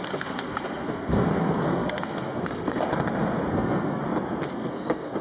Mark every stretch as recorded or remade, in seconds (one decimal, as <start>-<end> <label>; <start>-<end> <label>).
0.0-2.9 remade; 2.9-3.5 recorded; 3.5-4.0 remade; 4.0-4.5 recorded; 4.5-5.2 remade